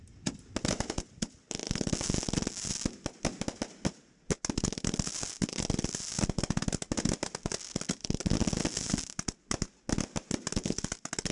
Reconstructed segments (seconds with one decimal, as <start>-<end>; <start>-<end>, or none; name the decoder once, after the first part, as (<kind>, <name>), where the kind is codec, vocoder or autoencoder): none